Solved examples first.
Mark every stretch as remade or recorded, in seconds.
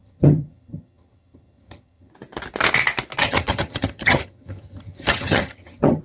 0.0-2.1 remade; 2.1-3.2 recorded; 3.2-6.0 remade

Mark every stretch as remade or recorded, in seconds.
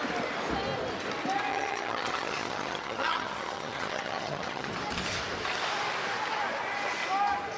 0.0-1.5 recorded; 1.5-4.7 remade; 4.7-7.6 recorded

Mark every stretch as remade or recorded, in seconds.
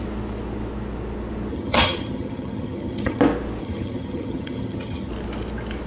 0.0-1.5 recorded; 1.5-3.2 remade; 3.2-3.6 recorded; 3.6-5.1 remade; 5.1-5.9 recorded